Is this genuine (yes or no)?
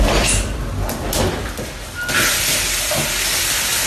yes